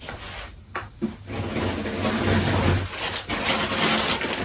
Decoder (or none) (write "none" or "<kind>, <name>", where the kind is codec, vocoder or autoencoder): none